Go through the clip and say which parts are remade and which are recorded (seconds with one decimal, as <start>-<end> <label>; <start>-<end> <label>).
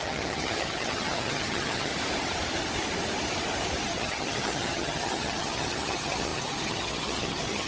0.0-1.9 remade; 1.9-3.9 recorded; 3.9-7.7 remade